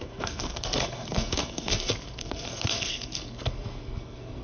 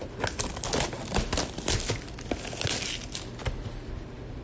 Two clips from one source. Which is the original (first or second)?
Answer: second